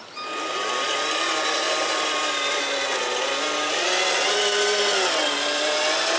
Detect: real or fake real